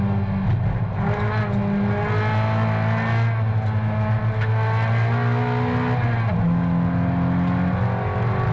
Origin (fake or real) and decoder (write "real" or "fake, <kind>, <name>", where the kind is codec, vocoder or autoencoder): real